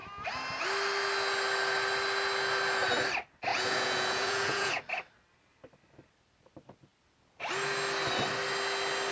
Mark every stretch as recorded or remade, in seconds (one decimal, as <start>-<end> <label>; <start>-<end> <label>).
0.0-3.5 recorded; 3.5-4.8 remade; 4.8-9.1 recorded